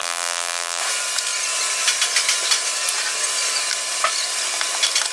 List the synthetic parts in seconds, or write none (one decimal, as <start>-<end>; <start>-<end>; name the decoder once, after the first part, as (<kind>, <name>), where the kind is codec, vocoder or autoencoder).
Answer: 0.0-0.8 (vocoder, BigVGAN v2)